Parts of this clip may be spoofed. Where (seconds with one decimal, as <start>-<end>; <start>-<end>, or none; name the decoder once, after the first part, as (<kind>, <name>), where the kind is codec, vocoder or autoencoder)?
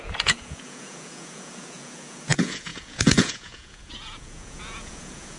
0.0-5.4 (vocoder, Vocos)